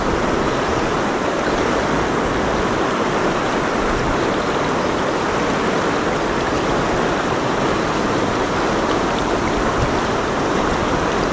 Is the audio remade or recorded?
recorded